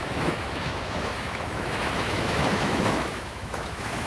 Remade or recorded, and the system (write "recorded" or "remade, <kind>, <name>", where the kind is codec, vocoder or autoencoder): remade, autoencoder, DAC-VAE